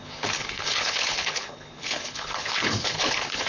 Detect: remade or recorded remade